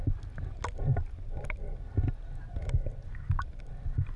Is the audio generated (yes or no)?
no